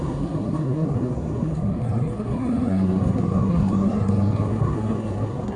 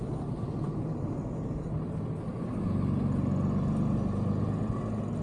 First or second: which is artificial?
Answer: first